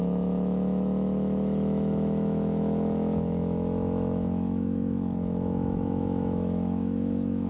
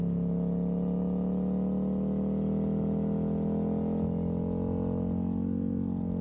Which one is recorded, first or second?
second